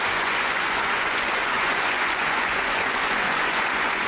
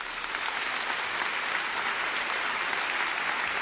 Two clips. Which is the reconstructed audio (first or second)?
first